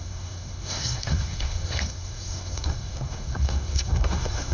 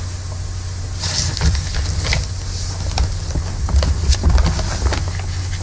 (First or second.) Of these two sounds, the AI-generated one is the first